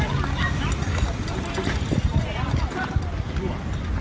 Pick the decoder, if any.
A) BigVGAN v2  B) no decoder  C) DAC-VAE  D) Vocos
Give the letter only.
B